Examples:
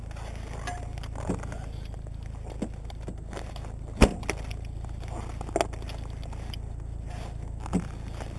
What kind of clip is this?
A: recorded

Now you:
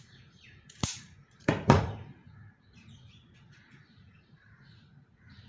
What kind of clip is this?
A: remade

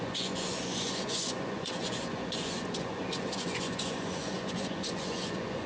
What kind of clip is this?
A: remade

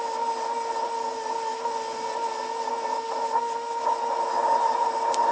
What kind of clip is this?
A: recorded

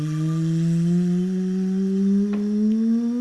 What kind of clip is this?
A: recorded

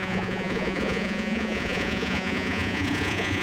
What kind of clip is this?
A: remade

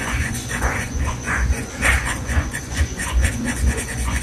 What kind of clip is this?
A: remade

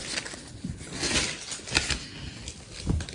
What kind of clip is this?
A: recorded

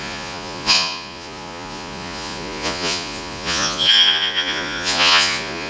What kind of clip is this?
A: remade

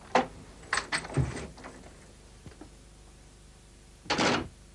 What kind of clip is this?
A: recorded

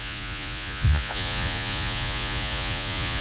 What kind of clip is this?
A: remade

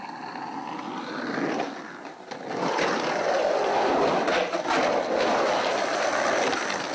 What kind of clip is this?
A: recorded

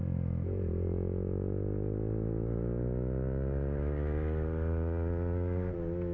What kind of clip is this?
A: recorded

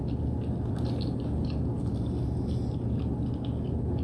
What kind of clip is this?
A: recorded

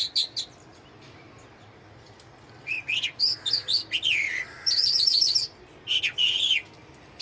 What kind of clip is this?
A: recorded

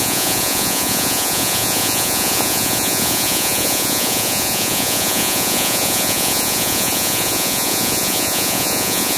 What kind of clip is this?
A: remade